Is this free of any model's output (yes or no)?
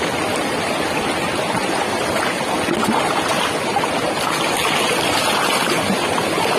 yes